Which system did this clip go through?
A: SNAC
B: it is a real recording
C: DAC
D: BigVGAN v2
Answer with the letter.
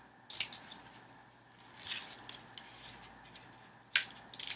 B